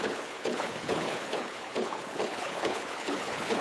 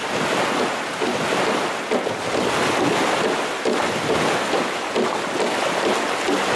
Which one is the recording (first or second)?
second